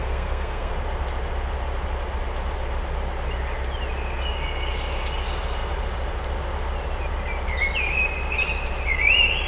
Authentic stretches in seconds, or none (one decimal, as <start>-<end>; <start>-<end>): 0.7-9.5